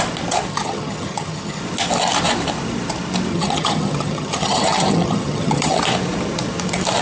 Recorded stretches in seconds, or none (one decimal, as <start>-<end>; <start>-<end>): 0.0-0.5; 1.6-3.3; 5.8-7.0